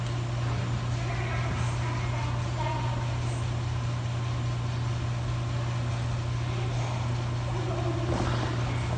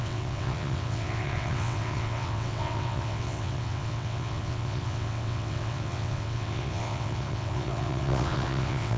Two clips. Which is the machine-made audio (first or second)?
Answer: second